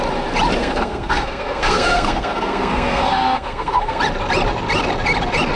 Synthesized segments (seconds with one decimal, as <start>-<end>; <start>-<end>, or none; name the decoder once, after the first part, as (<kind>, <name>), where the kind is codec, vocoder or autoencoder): 0.6-4.0 (codec, SNAC)